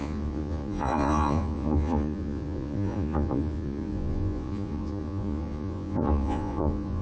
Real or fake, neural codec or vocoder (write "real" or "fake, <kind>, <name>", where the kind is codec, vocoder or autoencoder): fake, vocoder, Vocos